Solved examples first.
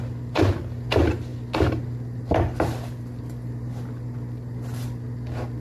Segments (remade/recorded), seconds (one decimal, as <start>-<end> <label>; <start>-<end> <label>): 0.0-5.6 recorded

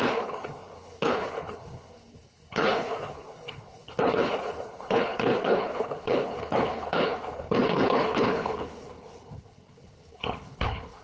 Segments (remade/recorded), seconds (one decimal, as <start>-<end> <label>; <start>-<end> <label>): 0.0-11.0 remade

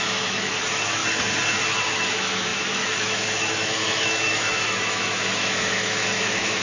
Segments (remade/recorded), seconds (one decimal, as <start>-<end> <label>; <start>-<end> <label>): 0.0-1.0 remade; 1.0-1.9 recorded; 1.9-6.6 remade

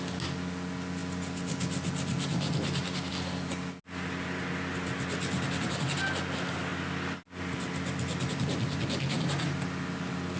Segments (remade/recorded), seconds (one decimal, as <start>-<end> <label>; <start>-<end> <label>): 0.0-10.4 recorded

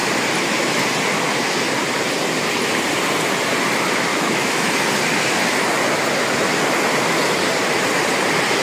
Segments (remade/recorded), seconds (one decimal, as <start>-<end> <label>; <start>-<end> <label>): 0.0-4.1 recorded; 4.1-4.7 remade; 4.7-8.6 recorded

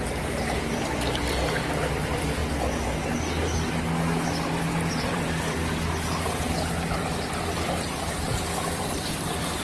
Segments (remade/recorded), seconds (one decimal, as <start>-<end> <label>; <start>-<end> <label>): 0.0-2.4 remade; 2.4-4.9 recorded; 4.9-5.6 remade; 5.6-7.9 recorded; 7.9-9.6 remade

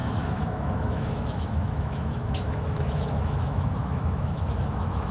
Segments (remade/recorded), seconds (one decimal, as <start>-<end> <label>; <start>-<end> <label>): 0.0-5.1 remade

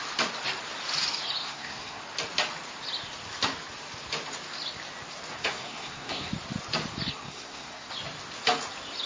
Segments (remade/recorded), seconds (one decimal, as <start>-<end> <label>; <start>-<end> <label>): 0.0-1.4 recorded; 1.4-2.0 remade; 2.0-5.4 recorded; 5.4-6.3 remade; 6.3-7.1 recorded; 7.1-7.9 remade; 7.9-9.1 recorded